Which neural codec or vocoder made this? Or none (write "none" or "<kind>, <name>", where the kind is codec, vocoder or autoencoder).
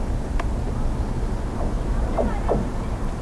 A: none